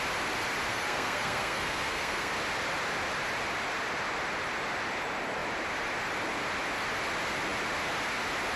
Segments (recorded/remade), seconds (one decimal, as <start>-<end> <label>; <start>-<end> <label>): 0.0-0.7 recorded; 0.7-2.3 remade; 2.3-8.6 recorded